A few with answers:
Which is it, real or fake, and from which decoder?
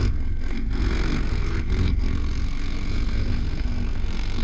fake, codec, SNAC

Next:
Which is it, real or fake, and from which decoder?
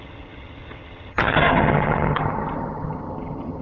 fake, vocoder, HiFi-GAN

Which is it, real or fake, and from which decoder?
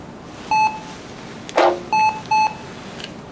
real